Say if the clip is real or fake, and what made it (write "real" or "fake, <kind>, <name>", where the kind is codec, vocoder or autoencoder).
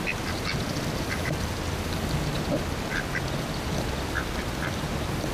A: real